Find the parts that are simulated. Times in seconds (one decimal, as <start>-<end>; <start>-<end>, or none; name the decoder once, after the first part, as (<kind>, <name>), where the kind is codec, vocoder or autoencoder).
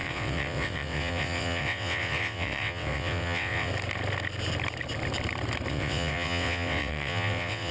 0.0-3.7 (vocoder, WaveNeXt); 5.7-7.7